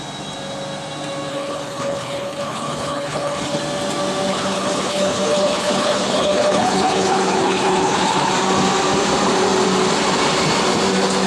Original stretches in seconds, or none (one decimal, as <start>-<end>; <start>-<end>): 0.0-1.3; 3.6-4.3; 8.3-11.3